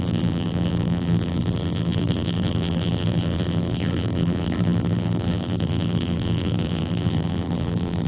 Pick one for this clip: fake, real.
fake